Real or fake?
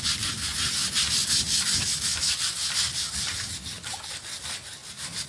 real